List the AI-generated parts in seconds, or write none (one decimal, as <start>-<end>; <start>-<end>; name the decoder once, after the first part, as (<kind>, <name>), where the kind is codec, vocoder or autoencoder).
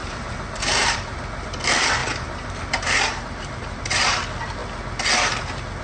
0.0-1.2 (vocoder, BigVGAN v2); 2.0-3.8